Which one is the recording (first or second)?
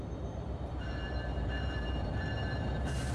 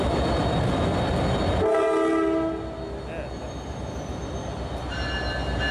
second